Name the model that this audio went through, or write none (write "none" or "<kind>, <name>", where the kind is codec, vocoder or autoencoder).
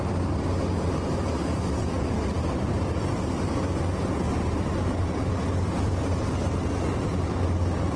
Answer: none